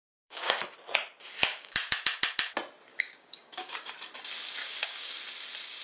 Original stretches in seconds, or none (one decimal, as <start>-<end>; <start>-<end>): 0.6-1.4; 2.0-2.9; 3.9-4.6; 5.2-5.8